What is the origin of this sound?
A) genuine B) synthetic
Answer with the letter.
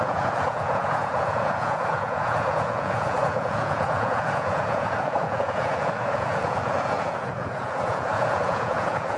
B